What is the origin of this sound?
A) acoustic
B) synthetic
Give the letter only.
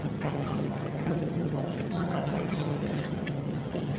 B